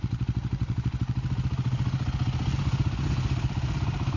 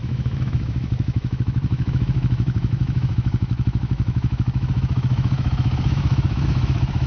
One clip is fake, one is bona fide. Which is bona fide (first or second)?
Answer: first